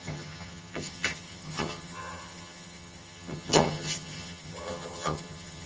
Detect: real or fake fake